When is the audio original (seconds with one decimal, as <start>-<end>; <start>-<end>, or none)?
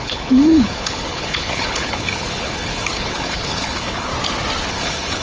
4.1-4.7